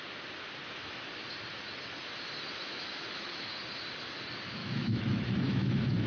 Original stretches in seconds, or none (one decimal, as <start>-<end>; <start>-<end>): 0.0-0.6; 1.1-2.6; 3.5-4.6